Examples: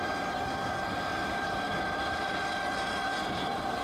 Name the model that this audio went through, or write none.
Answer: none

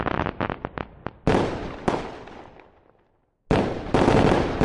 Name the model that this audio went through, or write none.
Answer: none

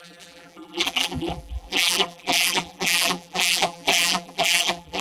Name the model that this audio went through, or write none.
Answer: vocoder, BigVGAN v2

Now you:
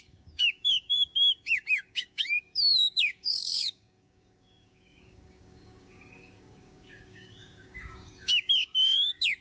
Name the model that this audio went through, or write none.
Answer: codec, DAC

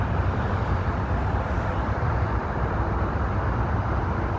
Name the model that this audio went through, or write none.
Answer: none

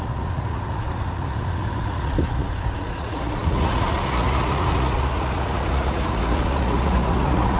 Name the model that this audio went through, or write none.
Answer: vocoder, Vocos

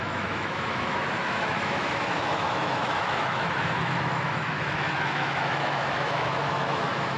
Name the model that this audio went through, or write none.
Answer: autoencoder, DAC-VAE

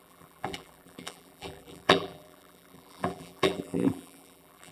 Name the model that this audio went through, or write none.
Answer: vocoder, BigVGAN v2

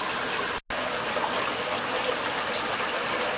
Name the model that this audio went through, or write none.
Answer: none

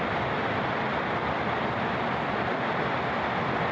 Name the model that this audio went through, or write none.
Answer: none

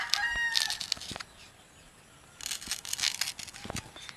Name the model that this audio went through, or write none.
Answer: none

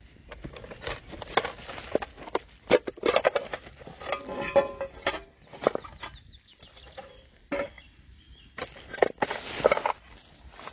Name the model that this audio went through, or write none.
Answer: none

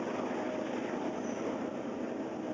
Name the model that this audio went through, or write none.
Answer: none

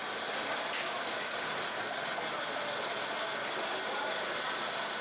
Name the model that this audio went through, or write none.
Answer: none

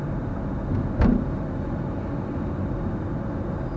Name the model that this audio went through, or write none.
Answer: none